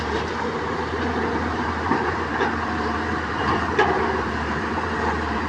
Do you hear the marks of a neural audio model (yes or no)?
yes